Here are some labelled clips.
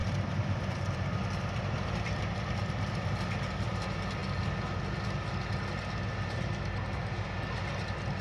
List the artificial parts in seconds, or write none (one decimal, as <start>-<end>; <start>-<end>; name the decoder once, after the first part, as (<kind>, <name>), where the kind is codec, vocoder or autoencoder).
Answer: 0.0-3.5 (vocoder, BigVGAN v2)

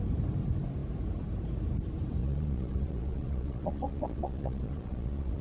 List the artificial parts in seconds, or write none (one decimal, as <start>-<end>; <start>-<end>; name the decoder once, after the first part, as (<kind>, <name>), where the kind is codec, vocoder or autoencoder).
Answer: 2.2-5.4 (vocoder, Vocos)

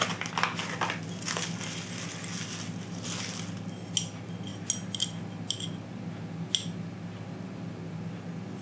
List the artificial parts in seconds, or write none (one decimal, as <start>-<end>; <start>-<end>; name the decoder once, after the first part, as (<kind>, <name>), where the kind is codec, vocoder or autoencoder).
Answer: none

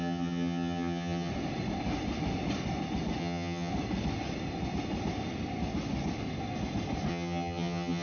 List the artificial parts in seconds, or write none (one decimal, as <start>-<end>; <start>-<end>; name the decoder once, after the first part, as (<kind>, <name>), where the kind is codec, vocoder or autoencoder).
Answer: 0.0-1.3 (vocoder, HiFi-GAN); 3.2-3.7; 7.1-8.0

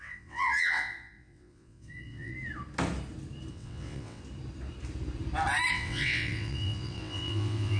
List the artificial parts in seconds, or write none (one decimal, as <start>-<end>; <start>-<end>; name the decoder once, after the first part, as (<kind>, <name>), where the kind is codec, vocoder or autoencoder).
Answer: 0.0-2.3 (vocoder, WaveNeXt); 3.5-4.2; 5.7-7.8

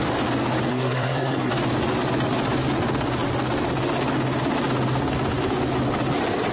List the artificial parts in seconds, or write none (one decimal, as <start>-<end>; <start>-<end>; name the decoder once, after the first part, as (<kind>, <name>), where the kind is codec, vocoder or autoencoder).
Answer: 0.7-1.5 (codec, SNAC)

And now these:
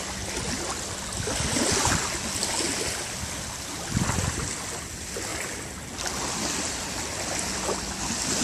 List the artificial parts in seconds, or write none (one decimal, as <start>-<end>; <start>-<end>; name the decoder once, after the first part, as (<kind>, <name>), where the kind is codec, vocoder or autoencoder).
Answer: none

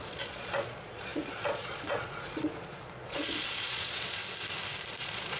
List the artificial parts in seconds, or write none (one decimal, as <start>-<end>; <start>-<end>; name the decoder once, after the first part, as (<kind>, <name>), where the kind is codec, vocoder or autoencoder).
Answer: 0.0-4.2 (vocoder, Vocos); 5.0-5.4